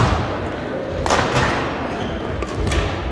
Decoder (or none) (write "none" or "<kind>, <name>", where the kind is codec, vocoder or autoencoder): none